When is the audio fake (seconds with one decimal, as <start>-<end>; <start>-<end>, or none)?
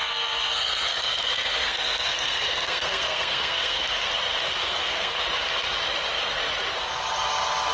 0.0-4.1; 4.6-5.2